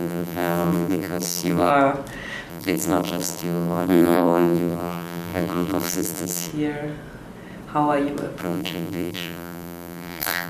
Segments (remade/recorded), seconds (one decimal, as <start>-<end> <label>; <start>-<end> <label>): 0.0-1.7 remade; 1.7-2.5 recorded; 2.5-6.5 remade; 6.5-8.4 recorded; 8.4-10.5 remade